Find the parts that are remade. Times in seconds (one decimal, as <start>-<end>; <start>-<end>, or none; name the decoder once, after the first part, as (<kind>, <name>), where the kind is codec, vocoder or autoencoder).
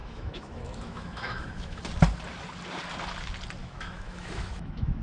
0.0-1.8 (autoencoder, DAC-VAE); 3.6-5.0